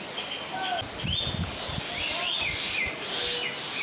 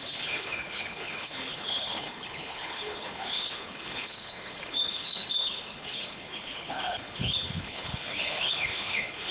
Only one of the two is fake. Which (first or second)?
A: second